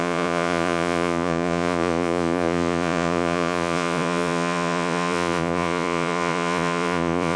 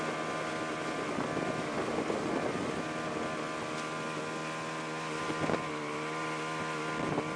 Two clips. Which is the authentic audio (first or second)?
second